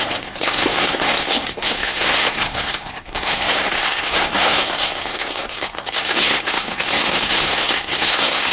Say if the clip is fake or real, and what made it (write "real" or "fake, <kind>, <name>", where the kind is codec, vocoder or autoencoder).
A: fake, codec, SNAC